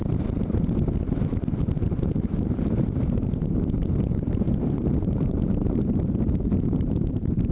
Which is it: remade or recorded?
remade